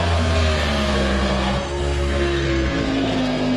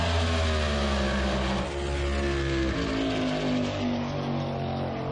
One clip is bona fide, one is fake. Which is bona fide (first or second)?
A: second